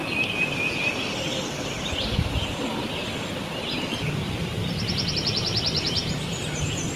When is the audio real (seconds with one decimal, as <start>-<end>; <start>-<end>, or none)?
0.0-3.8; 4.5-5.1; 6.0-7.0